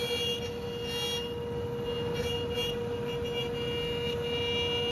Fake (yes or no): no